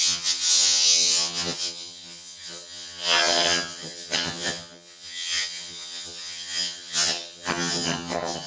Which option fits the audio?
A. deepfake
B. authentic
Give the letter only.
A